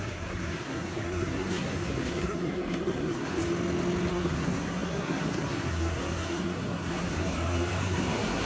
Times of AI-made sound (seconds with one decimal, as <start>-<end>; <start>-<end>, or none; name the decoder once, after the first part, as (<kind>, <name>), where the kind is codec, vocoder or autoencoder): 0.0-3.4 (codec, SNAC); 4.1-8.5